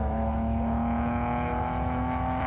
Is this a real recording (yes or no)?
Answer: no